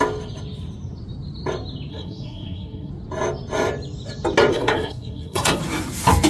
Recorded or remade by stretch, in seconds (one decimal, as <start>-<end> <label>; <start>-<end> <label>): 0.0-1.9 recorded; 1.9-2.9 remade; 2.9-4.5 recorded; 4.5-5.6 remade; 5.6-6.3 recorded